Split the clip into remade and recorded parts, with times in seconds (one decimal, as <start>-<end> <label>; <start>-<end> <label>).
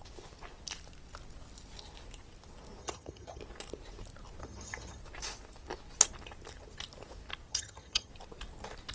0.0-2.8 recorded; 2.8-3.4 remade; 3.4-4.4 recorded; 4.4-5.0 remade; 5.0-7.5 recorded; 7.5-8.1 remade; 8.1-8.9 recorded